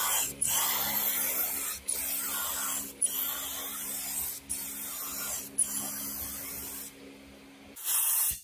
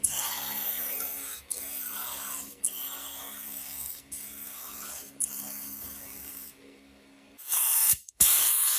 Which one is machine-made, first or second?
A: second